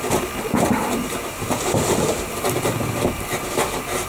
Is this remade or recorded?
recorded